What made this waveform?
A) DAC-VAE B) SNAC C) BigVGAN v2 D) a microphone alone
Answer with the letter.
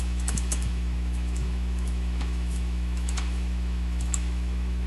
A